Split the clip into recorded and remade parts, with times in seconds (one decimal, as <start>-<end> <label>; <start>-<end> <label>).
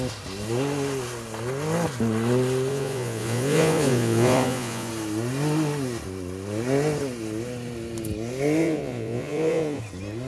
0.0-2.7 recorded; 2.7-4.9 remade; 4.9-8.6 recorded; 8.6-9.8 remade; 9.8-10.3 recorded